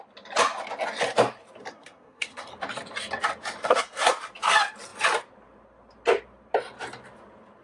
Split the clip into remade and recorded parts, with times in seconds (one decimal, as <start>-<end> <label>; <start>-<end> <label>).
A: 0.0-1.7 recorded; 1.7-2.5 remade; 2.5-3.6 recorded; 3.6-4.1 remade; 4.1-7.6 recorded